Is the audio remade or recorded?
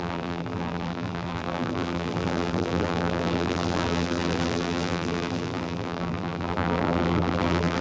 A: remade